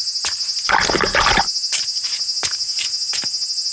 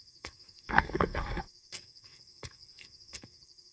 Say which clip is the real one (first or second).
first